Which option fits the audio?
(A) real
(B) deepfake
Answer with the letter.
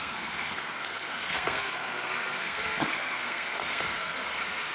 B